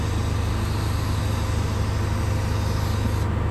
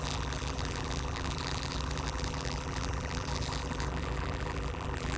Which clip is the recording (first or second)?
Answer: first